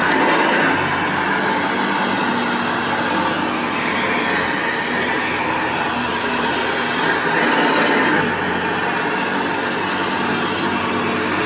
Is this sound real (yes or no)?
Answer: yes